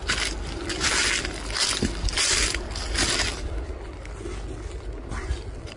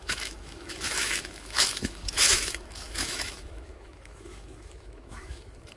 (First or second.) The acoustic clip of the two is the first